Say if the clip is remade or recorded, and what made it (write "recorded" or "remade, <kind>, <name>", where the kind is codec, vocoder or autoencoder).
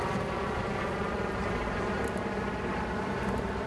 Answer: recorded